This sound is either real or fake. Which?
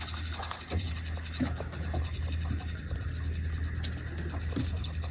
real